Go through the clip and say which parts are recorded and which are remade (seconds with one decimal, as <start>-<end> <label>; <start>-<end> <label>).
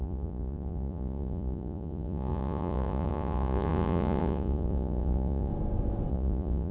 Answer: 0.0-5.5 remade; 5.5-6.1 recorded; 6.1-6.7 remade